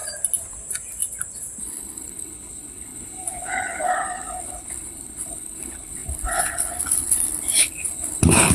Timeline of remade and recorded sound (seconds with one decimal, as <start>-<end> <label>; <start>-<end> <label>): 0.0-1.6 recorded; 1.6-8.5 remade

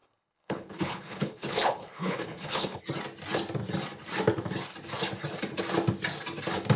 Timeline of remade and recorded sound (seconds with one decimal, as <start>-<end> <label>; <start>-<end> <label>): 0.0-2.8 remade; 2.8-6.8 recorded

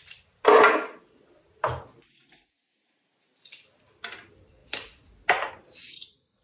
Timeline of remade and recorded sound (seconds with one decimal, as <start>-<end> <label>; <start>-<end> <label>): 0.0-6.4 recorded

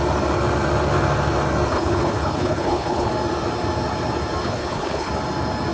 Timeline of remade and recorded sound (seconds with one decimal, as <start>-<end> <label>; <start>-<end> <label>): 0.0-1.7 recorded; 1.7-3.1 remade; 3.1-4.4 recorded; 4.4-5.1 remade; 5.1-5.7 recorded

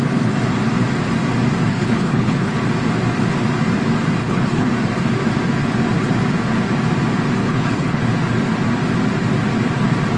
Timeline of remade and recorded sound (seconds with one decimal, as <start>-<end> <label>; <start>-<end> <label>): 0.0-1.7 recorded; 1.7-2.6 remade; 2.6-4.2 recorded; 4.2-4.7 remade; 4.7-7.4 recorded; 7.4-8.0 remade; 8.0-10.2 recorded

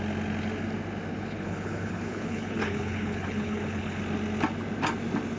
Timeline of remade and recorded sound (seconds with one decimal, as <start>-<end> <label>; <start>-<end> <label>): 0.0-1.1 recorded; 1.1-4.0 remade; 4.0-5.4 recorded